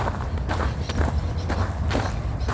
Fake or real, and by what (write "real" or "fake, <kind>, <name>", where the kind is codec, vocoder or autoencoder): real